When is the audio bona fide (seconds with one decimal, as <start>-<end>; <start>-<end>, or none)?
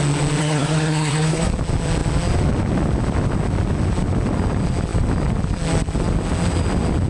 0.0-0.4; 1.5-7.1